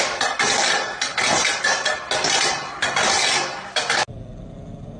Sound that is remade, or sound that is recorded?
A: recorded